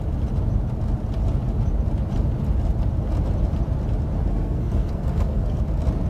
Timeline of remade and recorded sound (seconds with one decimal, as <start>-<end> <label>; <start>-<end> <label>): 0.0-4.3 recorded; 4.3-5.6 remade; 5.6-6.1 recorded